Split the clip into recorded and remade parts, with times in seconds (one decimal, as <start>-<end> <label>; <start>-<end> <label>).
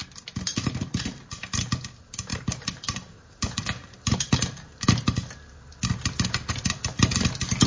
0.0-2.3 recorded; 2.3-4.8 remade; 4.8-7.7 recorded